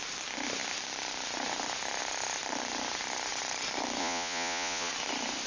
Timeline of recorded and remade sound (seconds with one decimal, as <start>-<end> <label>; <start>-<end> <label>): 0.0-4.0 recorded; 4.0-4.9 remade; 4.9-5.5 recorded